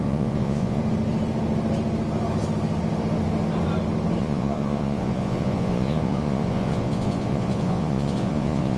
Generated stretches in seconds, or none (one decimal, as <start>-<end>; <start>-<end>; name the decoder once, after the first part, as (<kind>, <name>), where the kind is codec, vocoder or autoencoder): 0.0-0.8 (vocoder, Vocos); 4.2-8.8